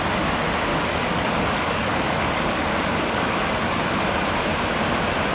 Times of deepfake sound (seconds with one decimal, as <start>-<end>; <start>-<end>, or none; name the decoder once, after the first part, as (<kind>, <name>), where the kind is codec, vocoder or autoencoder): 0.7-3.9 (codec, DAC)